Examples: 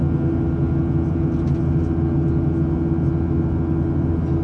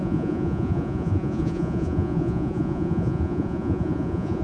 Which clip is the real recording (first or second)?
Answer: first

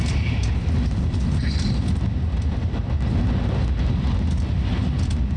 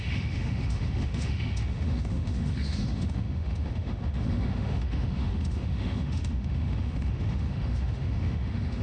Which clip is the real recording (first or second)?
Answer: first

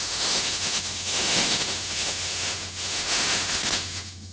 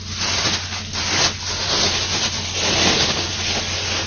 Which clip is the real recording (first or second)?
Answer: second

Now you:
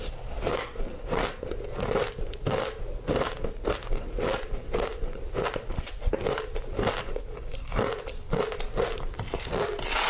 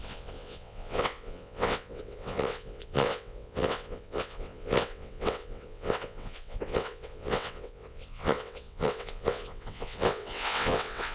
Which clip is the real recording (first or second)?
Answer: first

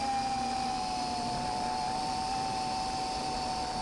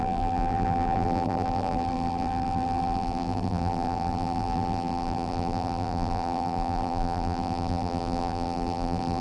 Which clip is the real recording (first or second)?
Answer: first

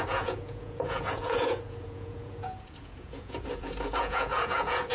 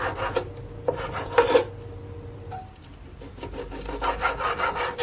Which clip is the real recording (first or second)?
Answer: second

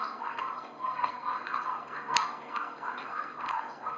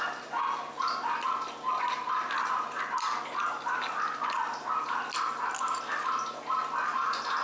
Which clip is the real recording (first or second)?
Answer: second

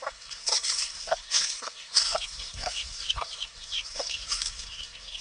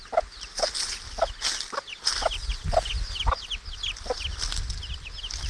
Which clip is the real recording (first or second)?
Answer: second